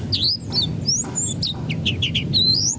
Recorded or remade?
recorded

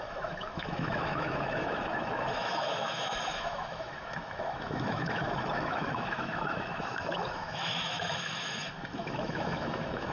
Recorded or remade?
remade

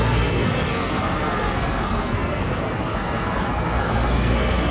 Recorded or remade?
remade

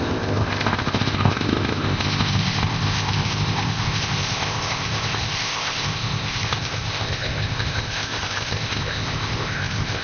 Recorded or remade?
remade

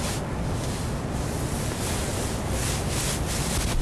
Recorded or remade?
recorded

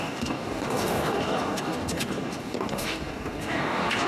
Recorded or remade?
remade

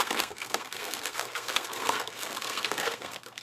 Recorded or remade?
remade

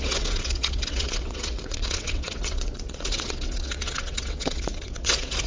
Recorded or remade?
remade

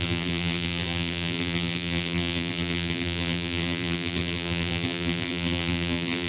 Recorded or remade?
remade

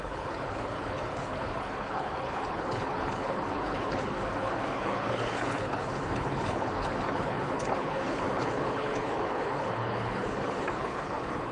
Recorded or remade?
remade